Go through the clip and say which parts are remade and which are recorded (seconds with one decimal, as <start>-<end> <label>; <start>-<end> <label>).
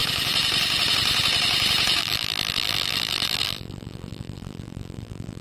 0.0-2.0 recorded; 2.0-5.4 remade